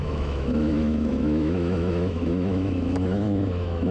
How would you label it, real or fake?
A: fake